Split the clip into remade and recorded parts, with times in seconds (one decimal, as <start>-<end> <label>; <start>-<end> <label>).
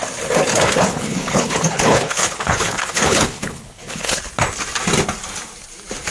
0.0-0.5 recorded; 0.5-4.2 remade; 4.2-6.1 recorded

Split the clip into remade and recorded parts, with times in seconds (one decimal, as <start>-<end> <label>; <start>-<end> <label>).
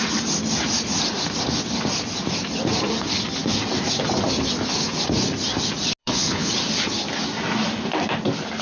0.0-6.0 recorded; 6.0-6.5 remade; 6.5-8.6 recorded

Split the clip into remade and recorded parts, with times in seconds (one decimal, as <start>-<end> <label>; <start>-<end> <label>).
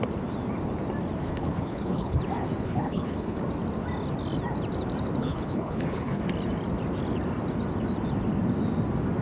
0.0-1.2 recorded; 1.2-2.2 remade; 2.2-2.6 recorded; 2.6-3.4 remade; 3.4-5.2 recorded; 5.2-6.2 remade; 6.2-9.2 recorded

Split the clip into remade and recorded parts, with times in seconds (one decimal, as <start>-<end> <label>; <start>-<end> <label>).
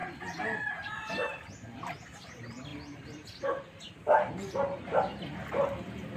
0.0-6.2 recorded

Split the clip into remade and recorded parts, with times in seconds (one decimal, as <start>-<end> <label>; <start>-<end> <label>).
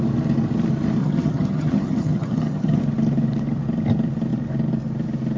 0.0-1.0 recorded; 1.0-2.8 remade; 2.8-5.4 recorded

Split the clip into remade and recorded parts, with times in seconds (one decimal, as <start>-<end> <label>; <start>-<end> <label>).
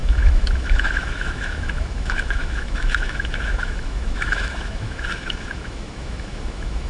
0.0-6.9 remade